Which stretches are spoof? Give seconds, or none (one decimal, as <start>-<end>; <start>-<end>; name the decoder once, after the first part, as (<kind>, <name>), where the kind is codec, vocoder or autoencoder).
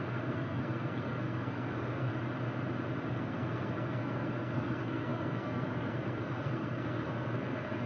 0.0-2.1 (codec, SNAC); 3.1-7.9